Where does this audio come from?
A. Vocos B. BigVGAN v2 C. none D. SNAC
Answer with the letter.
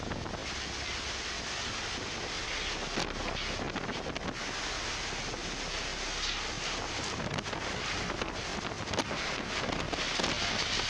C